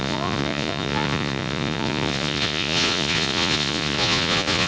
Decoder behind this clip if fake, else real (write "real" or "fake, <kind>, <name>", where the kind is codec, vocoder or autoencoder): fake, vocoder, Vocos